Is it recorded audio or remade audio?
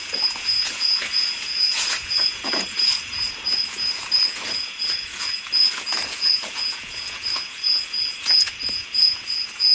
remade